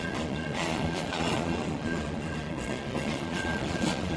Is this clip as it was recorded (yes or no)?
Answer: no